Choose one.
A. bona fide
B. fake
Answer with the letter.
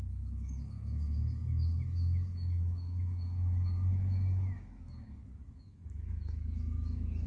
B